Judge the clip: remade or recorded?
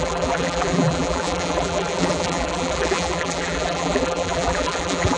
remade